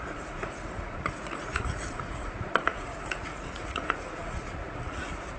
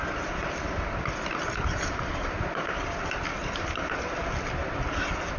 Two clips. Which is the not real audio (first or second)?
first